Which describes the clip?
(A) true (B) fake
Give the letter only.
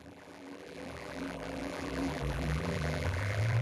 B